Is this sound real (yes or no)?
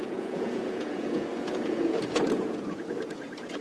no